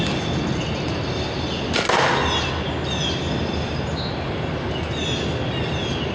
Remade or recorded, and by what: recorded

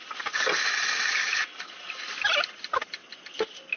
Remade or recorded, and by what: recorded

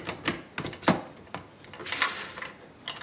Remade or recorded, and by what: recorded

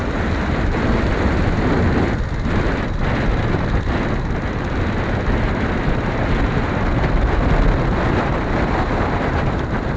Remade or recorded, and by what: recorded